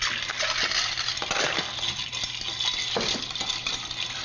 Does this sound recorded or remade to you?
recorded